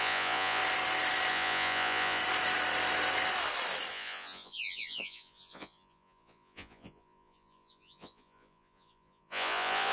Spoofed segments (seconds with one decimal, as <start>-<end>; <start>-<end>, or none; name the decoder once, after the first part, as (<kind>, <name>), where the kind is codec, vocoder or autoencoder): 0.0-0.6 (vocoder, Vocos); 1.3-2.2; 3.9-9.9

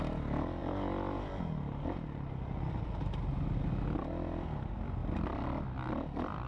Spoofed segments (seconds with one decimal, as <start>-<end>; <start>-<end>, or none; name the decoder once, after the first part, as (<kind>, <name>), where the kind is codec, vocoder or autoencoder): none

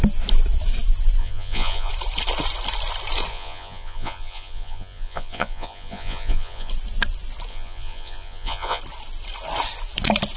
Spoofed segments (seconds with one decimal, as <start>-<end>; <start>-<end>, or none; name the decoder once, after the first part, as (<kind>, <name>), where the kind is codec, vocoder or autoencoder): 1.2-1.9 (vocoder, Vocos); 3.3-6.7; 7.5-8.8